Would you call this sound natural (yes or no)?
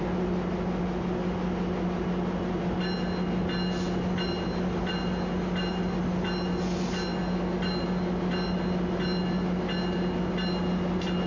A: yes